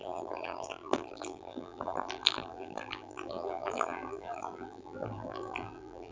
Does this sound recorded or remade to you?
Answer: remade